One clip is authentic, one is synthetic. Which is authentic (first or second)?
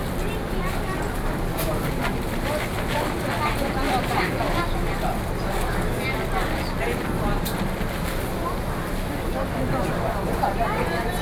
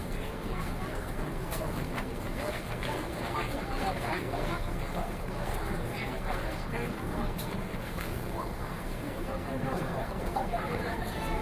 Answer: first